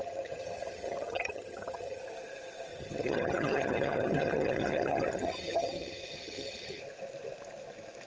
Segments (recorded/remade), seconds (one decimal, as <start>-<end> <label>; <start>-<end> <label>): 0.0-2.0 remade; 2.0-2.7 recorded; 2.7-6.8 remade; 6.8-8.1 recorded

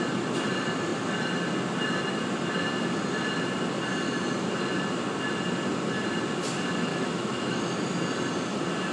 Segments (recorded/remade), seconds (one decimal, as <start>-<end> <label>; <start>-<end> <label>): 0.0-6.9 recorded; 6.9-7.7 remade; 7.7-8.9 recorded